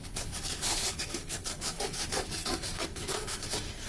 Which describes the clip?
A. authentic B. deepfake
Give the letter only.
B